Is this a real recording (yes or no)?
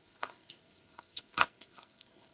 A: no